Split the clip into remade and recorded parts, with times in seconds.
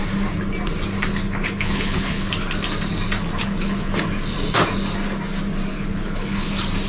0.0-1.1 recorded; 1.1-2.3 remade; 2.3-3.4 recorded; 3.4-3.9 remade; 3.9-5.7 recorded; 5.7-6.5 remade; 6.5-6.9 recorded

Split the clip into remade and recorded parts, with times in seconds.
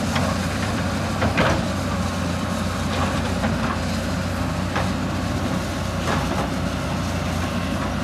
0.0-0.4 recorded; 0.4-1.1 remade; 1.1-8.0 recorded